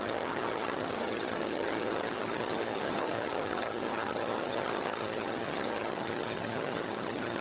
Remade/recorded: remade